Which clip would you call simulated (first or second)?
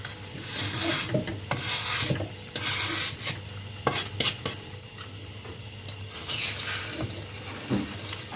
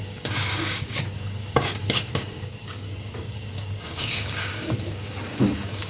second